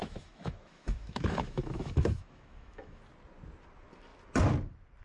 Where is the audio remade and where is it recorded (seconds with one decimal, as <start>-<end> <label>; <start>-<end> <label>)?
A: 0.0-3.0 remade; 3.0-5.0 recorded